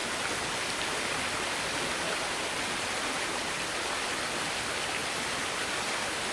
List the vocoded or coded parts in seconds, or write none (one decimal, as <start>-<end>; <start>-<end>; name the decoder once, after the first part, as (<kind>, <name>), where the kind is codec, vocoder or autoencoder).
5.0-5.7 (vocoder, BigVGAN v2)